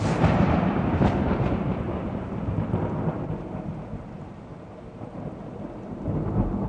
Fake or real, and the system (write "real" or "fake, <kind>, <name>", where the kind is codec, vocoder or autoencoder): fake, vocoder, BigVGAN v2